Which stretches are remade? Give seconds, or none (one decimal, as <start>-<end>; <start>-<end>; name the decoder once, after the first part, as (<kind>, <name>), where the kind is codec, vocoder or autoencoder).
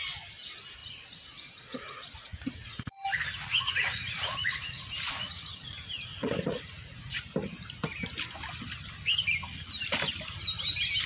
0.8-2.9 (vocoder, Vocos); 3.5-7.2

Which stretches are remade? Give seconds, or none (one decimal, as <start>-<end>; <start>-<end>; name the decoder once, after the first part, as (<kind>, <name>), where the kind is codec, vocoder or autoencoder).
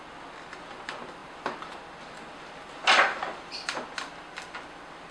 none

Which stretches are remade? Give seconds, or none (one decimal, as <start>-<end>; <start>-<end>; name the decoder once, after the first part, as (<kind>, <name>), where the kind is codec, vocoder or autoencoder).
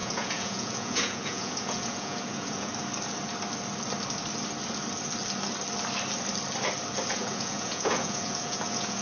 0.0-2.7 (vocoder, Vocos); 7.1-9.0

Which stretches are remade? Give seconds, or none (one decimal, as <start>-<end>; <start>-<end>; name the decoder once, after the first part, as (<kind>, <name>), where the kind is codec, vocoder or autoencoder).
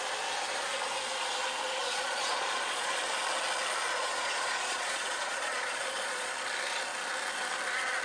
1.8-3.0 (vocoder, Vocos); 3.9-6.3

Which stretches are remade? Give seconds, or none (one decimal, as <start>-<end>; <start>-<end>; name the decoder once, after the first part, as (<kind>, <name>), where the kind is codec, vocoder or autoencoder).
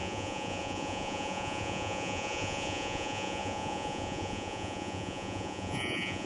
0.0-6.3 (vocoder, Vocos)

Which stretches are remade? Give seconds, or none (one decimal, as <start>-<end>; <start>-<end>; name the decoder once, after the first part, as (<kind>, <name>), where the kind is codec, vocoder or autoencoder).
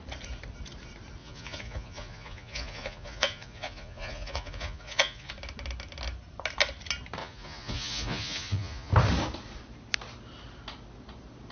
1.2-5.3 (vocoder, Vocos); 7.2-8.9